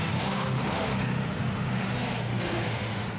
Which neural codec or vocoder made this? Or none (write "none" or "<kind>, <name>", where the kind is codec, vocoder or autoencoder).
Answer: autoencoder, DAC-VAE